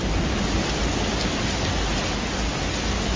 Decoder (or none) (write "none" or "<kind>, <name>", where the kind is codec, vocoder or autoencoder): none